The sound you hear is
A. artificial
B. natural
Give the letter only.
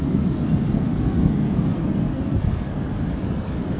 A